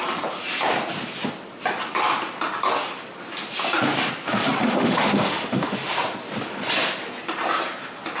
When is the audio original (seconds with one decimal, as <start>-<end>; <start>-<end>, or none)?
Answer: 0.0-4.6; 6.0-8.2